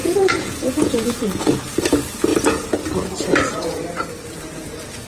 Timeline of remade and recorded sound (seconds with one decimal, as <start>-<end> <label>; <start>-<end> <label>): 0.0-1.6 remade; 1.6-5.1 recorded